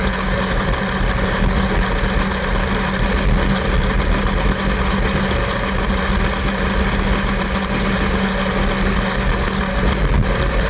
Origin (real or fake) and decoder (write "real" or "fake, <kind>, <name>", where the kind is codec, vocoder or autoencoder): real